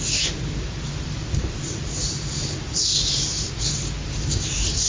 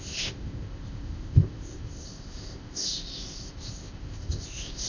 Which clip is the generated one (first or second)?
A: second